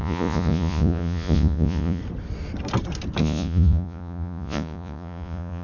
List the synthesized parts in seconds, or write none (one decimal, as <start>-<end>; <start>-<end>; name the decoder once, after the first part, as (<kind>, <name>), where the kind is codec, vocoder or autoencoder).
0.0-2.0 (vocoder, Vocos); 3.2-5.6